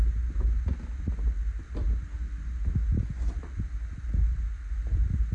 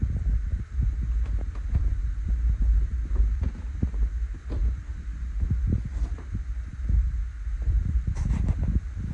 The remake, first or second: second